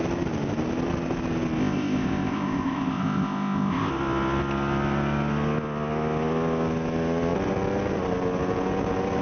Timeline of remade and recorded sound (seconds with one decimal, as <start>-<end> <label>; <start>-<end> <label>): 0.0-1.6 recorded; 1.6-3.9 remade; 3.9-9.2 recorded